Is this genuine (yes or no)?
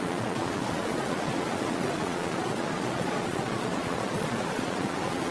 no